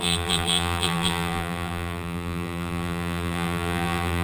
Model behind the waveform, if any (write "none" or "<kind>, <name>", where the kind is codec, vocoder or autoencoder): vocoder, BigVGAN v2